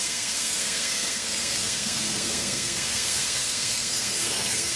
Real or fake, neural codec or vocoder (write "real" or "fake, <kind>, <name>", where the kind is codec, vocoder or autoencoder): fake, codec, SNAC